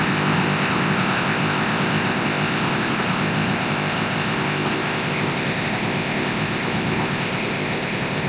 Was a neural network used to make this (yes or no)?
yes